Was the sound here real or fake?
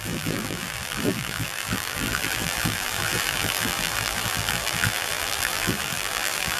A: fake